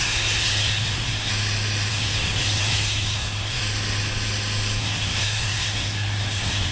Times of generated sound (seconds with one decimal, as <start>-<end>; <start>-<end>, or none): 0.0-1.3; 1.9-3.6; 4.8-6.7